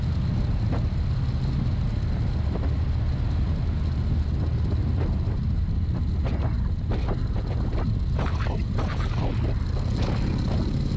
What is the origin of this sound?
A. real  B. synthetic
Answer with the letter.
A